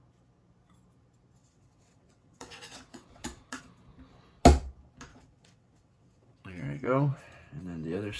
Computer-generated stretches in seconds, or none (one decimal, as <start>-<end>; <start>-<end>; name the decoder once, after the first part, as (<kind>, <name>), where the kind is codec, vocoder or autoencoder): 1.4-3.6 (vocoder, WaveNeXt); 5.1-7.2